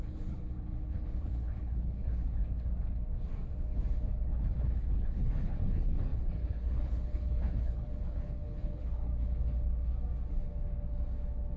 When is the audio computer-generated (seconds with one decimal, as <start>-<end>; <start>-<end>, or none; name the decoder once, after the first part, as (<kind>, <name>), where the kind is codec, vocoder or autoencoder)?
0.0-2.4 (codec, HILCodec); 4.3-9.1